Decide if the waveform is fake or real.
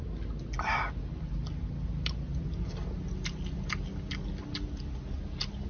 real